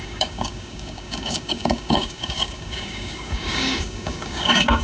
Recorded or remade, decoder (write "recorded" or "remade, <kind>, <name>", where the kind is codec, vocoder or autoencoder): remade, codec, DAC